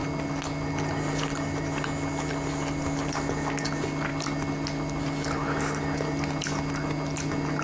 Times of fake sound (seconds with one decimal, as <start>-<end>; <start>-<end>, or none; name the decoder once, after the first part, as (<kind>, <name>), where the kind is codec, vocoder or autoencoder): none